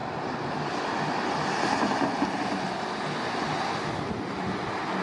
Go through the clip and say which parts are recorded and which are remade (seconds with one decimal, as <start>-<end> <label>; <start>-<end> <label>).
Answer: 0.0-5.0 recorded